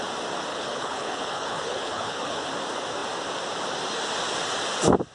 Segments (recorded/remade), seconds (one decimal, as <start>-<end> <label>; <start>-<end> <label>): 0.0-0.5 recorded; 0.5-2.5 remade; 2.5-5.1 recorded